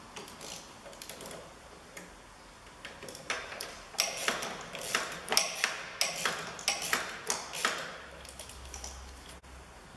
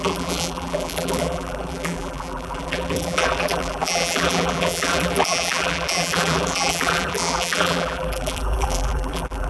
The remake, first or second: second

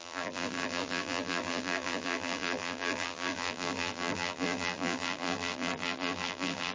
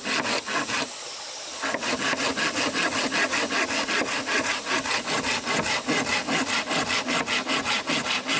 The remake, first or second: first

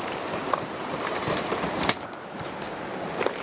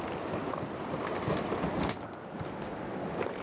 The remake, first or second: first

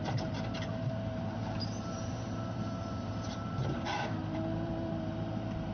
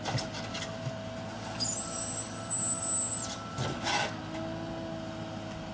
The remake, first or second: first